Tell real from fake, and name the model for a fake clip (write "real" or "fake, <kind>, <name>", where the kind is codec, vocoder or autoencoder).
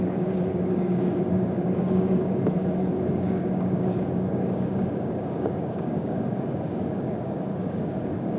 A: fake, codec, DAC